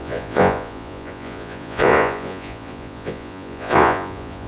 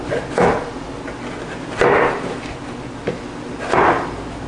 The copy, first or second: first